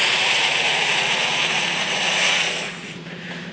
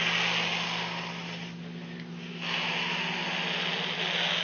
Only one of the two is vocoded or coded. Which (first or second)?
first